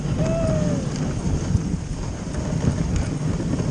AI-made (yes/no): no